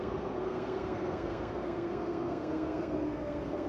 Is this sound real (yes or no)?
no